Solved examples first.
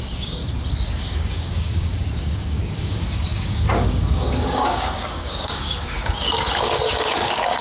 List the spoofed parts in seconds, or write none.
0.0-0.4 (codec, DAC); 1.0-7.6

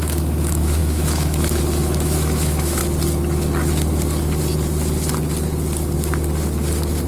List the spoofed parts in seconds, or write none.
0.0-2.8 (autoencoder, DAC-VAE)

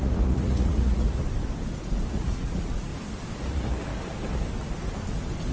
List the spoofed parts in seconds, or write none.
0.0-1.2 (vocoder, Vocos); 2.1-2.9; 3.4-3.9